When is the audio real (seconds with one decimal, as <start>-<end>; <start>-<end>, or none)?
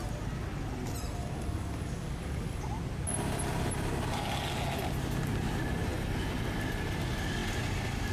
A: 0.0-1.2; 2.6-8.1